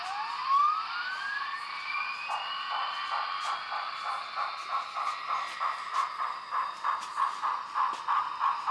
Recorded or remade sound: recorded